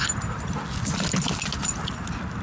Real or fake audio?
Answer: real